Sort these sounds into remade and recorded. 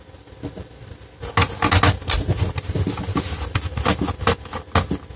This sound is recorded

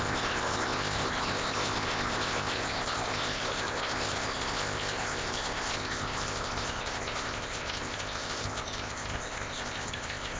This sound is remade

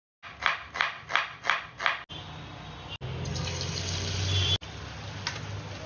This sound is recorded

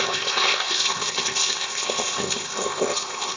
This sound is remade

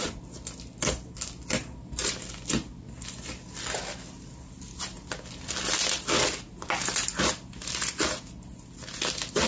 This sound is recorded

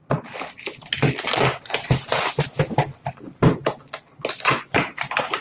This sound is recorded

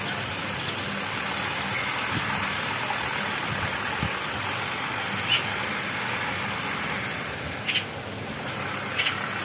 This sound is recorded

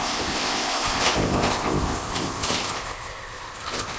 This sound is remade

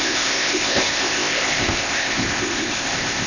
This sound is remade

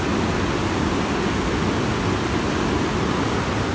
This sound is recorded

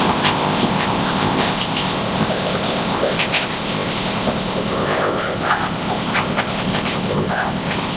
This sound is remade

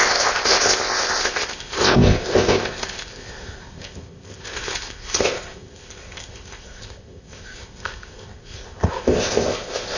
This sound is remade